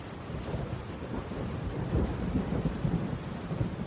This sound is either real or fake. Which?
real